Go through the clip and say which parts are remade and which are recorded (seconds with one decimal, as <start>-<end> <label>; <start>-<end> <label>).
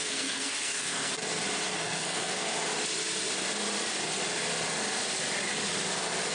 0.0-1.1 remade; 1.1-1.7 recorded; 1.7-2.5 remade; 2.5-6.3 recorded